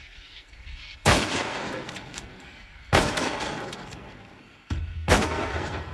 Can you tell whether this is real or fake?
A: fake